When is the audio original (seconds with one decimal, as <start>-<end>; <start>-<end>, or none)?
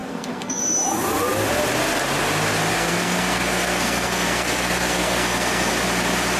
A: 0.6-2.7; 5.7-6.4